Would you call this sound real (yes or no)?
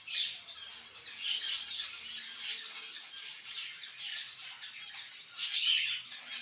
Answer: yes